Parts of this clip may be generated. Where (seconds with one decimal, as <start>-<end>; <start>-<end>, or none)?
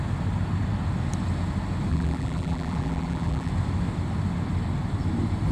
1.9-3.5